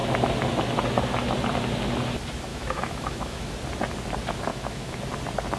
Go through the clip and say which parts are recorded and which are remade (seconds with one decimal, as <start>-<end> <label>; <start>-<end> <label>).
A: 0.0-2.5 recorded; 2.5-3.5 remade; 3.5-4.5 recorded; 4.5-5.0 remade; 5.0-5.6 recorded